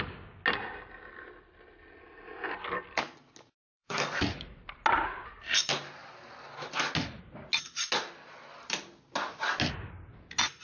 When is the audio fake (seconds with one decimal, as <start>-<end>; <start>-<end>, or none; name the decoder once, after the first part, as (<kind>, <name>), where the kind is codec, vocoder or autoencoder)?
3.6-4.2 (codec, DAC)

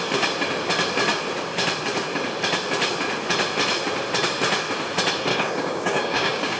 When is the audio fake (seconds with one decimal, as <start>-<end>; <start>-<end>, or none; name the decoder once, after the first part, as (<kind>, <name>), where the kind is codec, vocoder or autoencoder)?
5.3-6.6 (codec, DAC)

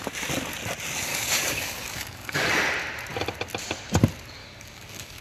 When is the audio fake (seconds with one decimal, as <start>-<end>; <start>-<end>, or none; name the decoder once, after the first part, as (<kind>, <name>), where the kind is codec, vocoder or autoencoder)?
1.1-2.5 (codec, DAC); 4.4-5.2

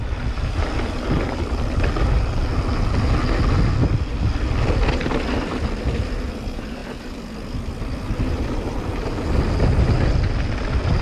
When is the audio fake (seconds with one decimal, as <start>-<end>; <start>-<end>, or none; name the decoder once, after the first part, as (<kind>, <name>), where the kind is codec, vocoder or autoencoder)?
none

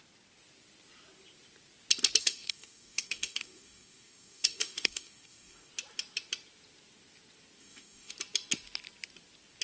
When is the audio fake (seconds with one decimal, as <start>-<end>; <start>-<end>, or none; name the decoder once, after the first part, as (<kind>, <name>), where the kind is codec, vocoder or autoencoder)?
2.2-5.7 (codec, DAC); 7.6-8.1

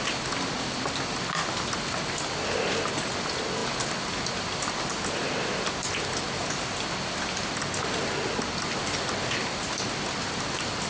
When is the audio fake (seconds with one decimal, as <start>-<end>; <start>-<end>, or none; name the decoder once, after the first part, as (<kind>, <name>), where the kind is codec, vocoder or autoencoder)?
none

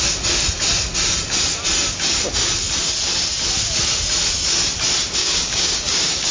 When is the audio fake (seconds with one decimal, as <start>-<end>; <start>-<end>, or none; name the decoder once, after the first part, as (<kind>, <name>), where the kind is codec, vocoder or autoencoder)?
5.2-6.3 (codec, DAC)